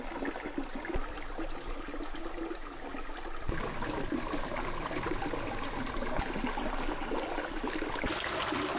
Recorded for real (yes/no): yes